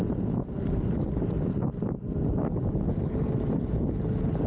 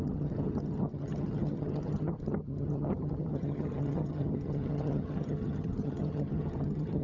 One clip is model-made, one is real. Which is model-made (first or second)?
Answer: second